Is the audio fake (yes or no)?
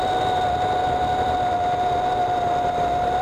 no